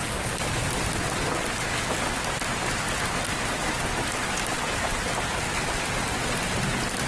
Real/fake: real